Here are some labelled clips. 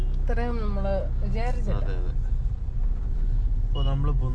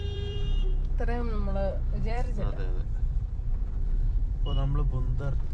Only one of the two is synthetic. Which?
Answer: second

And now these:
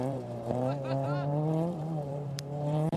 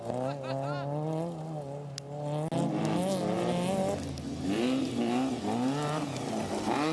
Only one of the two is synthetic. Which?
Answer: first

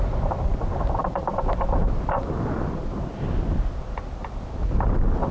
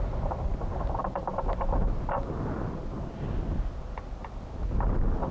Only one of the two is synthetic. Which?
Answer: first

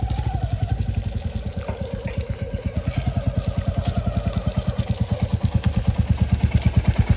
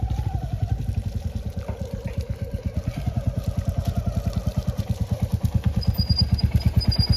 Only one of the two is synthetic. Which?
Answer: second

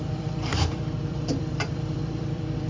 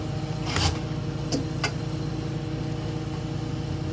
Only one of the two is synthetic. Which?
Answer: first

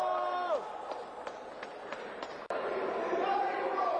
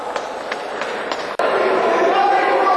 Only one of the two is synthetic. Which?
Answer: first